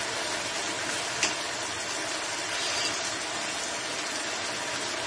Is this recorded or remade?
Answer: recorded